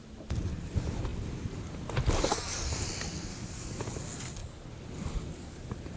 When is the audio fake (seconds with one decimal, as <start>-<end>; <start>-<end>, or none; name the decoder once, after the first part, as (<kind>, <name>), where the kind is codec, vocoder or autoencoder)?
3.3-3.8 (codec, DAC)